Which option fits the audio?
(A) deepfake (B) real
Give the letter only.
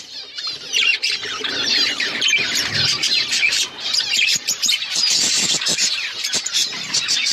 A